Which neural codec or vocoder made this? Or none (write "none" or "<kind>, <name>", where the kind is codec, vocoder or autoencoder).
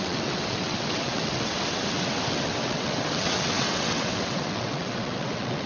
vocoder, WaveNeXt